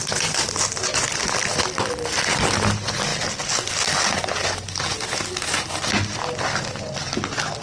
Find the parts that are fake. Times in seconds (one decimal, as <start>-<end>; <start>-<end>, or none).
none